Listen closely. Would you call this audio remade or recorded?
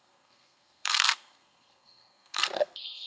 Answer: remade